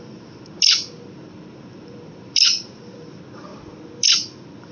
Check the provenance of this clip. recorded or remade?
recorded